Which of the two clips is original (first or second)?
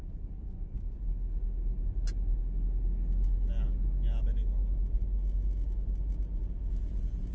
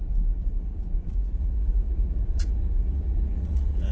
first